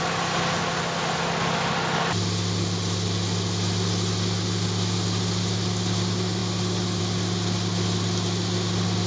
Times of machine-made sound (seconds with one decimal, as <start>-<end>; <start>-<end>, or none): none